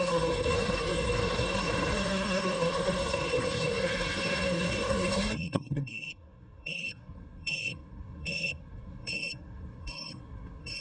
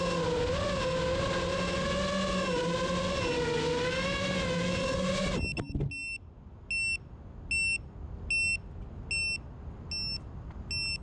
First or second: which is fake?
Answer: first